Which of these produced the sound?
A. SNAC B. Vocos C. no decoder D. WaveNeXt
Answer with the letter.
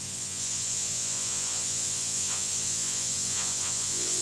B